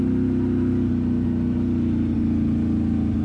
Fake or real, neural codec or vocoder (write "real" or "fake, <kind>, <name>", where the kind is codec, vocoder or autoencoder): real